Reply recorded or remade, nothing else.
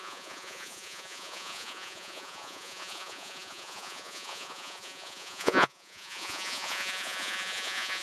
remade